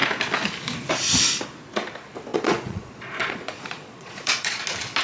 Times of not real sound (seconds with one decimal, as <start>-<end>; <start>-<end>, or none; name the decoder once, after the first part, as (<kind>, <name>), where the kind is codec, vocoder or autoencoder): 2.3-4.6 (vocoder, Vocos)